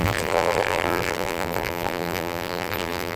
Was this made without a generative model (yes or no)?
no